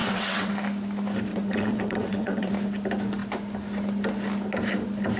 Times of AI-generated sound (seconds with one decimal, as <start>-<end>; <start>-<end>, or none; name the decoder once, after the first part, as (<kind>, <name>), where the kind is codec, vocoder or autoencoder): 0.0-0.5 (vocoder, WaveNeXt); 1.3-2.5